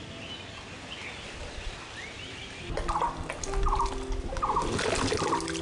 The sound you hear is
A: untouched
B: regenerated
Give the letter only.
A